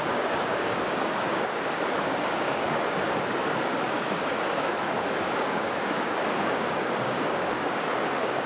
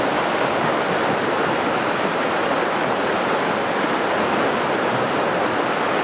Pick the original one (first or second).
second